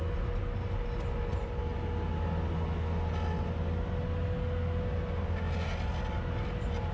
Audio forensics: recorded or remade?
recorded